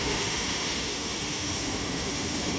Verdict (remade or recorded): remade